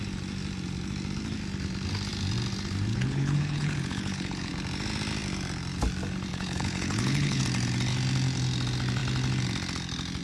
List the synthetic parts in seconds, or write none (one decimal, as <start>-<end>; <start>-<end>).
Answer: 2.9-4.5; 6.3-7.4